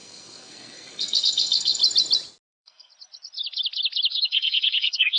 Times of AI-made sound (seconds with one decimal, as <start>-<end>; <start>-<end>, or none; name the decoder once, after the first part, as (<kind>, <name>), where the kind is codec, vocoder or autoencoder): 0.0-1.8 (codec, SNAC); 2.5-2.9; 4.1-5.2

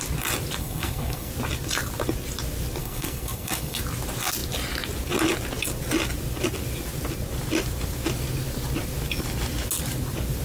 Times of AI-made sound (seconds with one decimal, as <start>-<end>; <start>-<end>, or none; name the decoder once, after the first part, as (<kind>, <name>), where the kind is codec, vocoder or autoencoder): 0.6-1.3 (codec, SNAC); 2.8-3.8